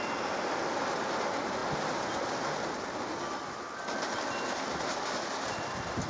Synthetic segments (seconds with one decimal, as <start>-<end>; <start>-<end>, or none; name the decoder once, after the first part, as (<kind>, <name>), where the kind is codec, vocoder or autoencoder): none